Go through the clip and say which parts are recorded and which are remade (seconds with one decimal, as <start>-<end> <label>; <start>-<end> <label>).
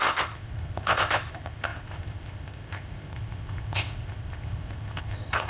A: 0.0-5.5 remade